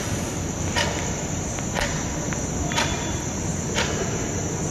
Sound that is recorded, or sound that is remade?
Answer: recorded